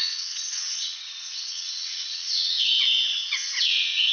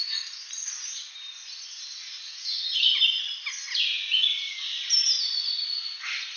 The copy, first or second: first